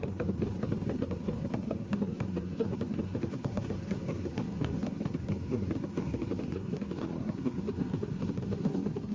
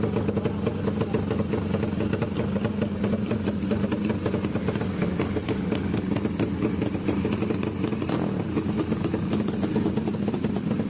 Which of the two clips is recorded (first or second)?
second